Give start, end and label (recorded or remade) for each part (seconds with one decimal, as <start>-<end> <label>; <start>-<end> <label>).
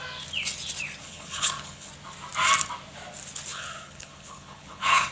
0.0-1.0 recorded; 1.0-1.9 remade; 1.9-3.5 recorded; 3.5-5.1 remade